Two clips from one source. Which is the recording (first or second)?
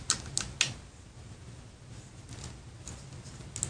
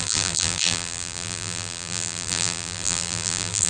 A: first